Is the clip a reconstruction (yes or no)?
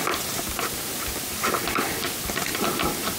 no